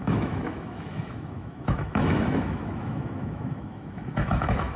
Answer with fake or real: fake